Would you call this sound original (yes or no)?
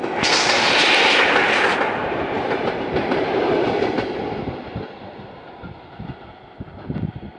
yes